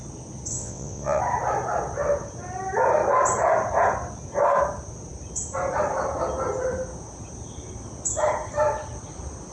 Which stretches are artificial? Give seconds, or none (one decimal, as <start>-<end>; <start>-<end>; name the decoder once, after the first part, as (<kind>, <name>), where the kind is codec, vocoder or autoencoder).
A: 0.5-1.2 (vocoder, WaveNeXt)